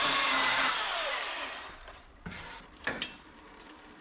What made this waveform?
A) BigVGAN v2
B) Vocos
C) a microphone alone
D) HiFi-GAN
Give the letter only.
A